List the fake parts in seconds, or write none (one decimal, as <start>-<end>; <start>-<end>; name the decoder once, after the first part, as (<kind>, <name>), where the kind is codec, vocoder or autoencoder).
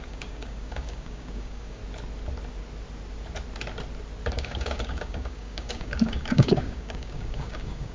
0.0-1.8 (codec, DAC); 4.3-7.9